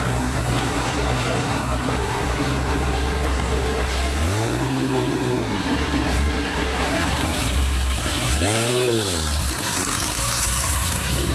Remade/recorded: remade